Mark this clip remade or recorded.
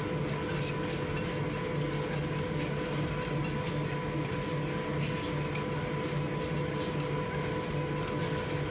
recorded